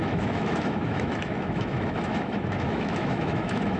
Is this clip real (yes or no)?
no